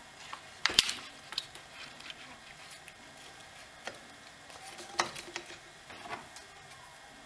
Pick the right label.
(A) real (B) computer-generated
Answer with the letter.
A